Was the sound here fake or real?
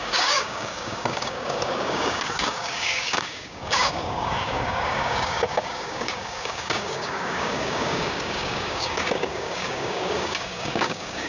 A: fake